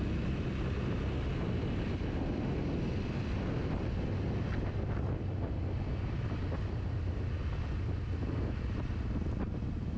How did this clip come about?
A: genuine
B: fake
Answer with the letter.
A